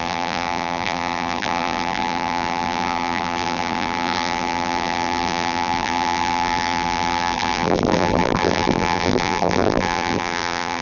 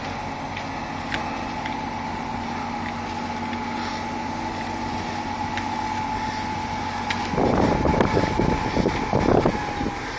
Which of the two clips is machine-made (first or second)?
first